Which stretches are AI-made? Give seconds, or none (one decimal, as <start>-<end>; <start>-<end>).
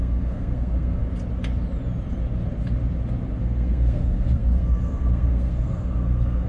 0.0-1.0; 3.4-6.5